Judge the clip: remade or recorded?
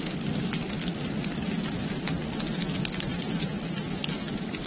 recorded